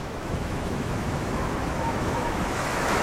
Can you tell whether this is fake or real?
fake